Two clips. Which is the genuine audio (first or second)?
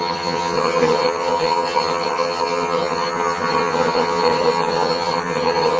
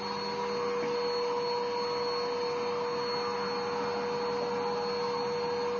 second